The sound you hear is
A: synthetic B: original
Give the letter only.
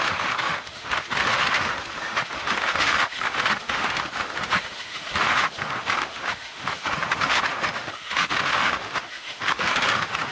A